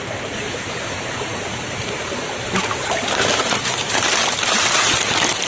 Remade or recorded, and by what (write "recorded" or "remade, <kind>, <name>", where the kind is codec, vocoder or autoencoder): remade, vocoder, BigVGAN v2